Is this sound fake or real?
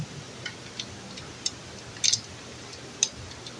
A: real